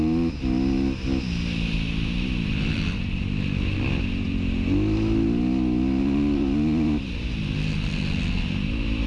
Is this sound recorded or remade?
recorded